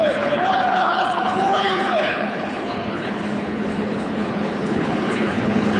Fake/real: fake